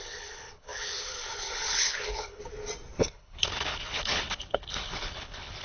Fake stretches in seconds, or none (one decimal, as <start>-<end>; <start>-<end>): 0.0-2.4; 3.0-5.6